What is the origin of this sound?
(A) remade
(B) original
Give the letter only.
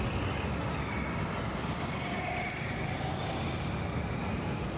B